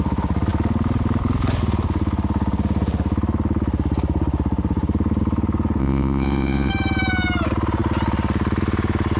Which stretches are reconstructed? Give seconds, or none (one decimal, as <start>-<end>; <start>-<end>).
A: 5.8-6.7